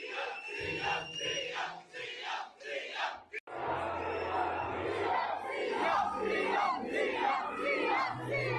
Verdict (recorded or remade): recorded